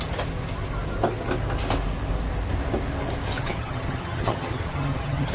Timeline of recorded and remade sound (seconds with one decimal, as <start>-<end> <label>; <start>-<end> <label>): 0.0-3.4 recorded; 3.4-5.3 remade